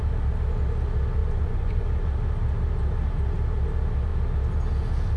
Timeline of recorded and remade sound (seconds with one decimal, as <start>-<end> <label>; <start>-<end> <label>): 0.0-1.2 recorded; 1.2-1.8 remade; 1.8-5.2 recorded